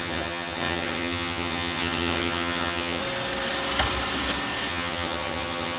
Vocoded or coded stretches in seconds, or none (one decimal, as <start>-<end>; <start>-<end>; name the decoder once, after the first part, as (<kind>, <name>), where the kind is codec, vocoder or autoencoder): 0.0-3.0 (vocoder, HiFi-GAN); 4.7-5.8